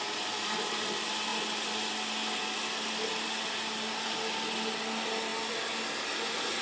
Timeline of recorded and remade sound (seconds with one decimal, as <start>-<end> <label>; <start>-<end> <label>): 0.0-6.6 recorded